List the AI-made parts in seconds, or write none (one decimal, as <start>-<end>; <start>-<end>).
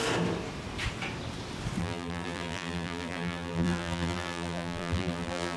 1.8-5.6